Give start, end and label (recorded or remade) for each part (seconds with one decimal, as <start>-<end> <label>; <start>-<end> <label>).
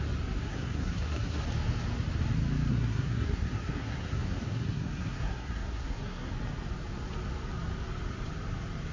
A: 0.0-0.4 recorded; 0.4-1.4 remade; 1.4-2.7 recorded; 2.7-6.3 remade; 6.3-8.9 recorded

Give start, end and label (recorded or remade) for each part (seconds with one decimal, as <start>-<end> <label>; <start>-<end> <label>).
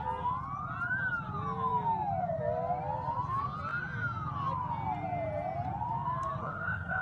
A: 0.0-6.4 recorded; 6.4-7.0 remade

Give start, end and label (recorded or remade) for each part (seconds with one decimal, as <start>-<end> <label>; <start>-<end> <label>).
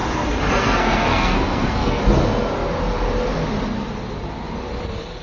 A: 0.0-0.5 recorded; 0.5-2.0 remade; 2.0-5.2 recorded